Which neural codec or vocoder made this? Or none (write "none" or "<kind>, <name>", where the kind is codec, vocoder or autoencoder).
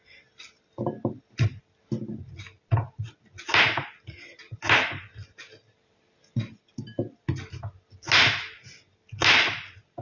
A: none